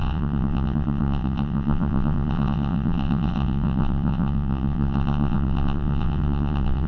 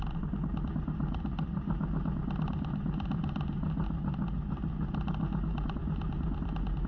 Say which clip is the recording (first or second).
second